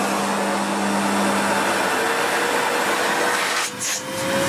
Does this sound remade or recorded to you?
recorded